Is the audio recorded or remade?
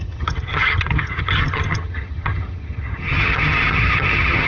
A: remade